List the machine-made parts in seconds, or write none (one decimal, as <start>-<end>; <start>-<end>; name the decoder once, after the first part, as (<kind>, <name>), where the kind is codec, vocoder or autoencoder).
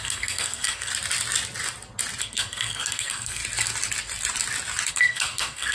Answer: 0.0-0.9 (codec, SNAC); 2.2-3.4; 4.9-5.7